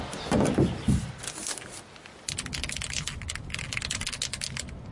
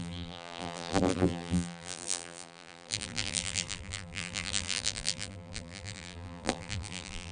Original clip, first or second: first